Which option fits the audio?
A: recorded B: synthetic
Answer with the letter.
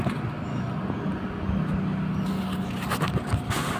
A